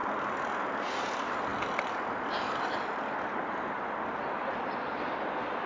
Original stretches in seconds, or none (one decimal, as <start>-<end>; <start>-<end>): 0.0-5.7